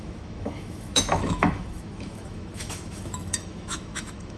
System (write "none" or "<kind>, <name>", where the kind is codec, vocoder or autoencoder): autoencoder, DAC-VAE